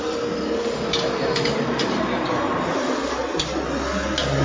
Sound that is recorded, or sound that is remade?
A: recorded